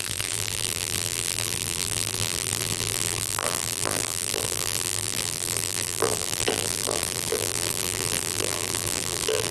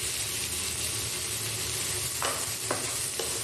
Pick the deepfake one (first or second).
first